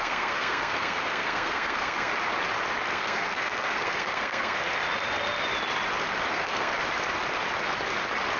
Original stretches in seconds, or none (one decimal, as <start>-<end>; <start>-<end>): 2.1-2.9; 4.8-6.3; 6.7-8.4